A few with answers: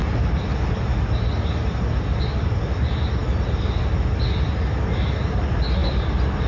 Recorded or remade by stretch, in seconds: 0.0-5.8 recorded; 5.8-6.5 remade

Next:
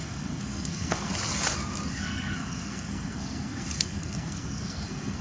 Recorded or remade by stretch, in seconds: 0.0-1.1 remade; 1.1-1.9 recorded; 1.9-5.2 remade